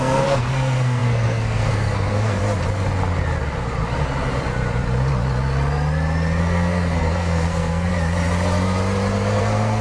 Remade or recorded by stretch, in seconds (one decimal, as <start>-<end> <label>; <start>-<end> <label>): 0.0-2.4 remade; 2.4-6.4 recorded; 6.4-7.9 remade; 7.9-9.4 recorded; 9.4-9.8 remade

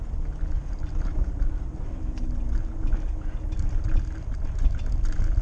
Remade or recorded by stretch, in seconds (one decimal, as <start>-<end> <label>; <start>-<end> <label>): 0.0-5.4 recorded

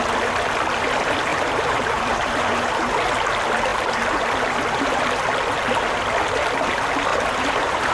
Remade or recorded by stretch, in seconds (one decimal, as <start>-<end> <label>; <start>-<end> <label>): 0.0-1.3 recorded; 1.3-2.9 remade; 2.9-7.1 recorded; 7.1-7.9 remade